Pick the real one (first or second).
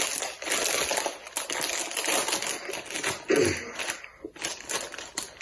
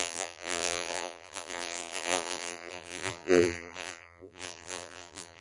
first